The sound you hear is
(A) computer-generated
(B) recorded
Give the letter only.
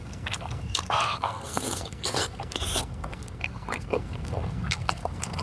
A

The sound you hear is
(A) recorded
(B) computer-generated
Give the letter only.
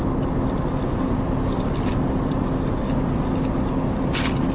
A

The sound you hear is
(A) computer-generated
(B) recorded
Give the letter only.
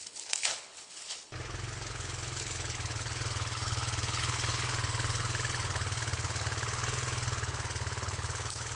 A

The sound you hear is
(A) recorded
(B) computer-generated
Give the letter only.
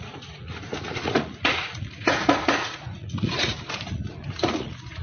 B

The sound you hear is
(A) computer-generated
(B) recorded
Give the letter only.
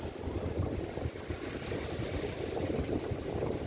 B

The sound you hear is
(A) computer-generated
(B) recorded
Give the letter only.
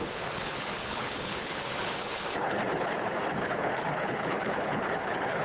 A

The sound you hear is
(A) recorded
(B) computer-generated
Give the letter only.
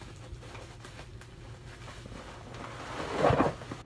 A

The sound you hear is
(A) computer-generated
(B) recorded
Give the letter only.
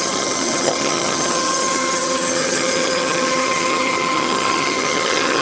A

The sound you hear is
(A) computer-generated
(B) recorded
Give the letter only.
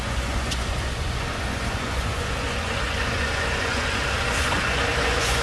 A